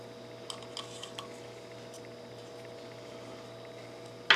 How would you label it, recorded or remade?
recorded